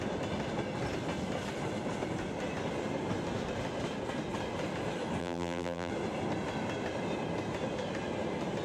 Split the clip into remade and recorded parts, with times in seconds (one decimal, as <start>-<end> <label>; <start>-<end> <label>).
0.0-5.2 recorded; 5.2-5.9 remade; 5.9-8.6 recorded